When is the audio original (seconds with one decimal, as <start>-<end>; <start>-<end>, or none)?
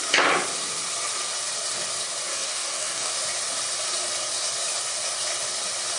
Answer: 0.0-2.3; 3.1-6.0